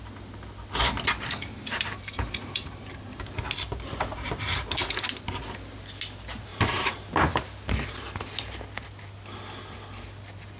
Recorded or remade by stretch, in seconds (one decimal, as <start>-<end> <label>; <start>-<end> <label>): 0.0-1.9 recorded; 1.9-3.2 remade; 3.2-6.5 recorded; 6.5-7.0 remade; 7.0-10.6 recorded